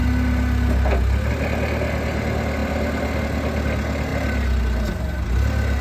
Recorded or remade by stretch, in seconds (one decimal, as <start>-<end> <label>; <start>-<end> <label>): 0.0-5.8 recorded